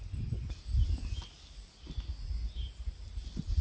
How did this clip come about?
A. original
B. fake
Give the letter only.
A